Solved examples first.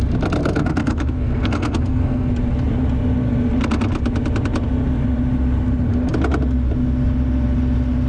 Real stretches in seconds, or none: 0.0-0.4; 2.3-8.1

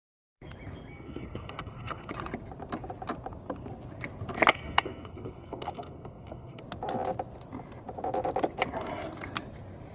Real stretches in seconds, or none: 0.0-0.9; 2.1-4.5; 6.6-9.9

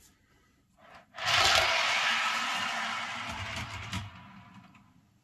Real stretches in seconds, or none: 0.0-5.2

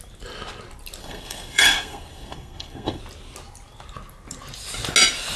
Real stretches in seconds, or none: 0.0-1.0; 3.0-5.4

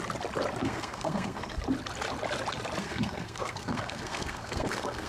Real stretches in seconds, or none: 0.0-0.6; 1.6-2.8

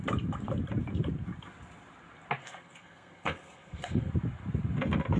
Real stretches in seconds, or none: 0.0-2.4; 4.1-5.2

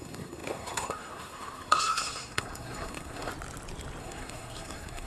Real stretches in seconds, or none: 3.3-4.0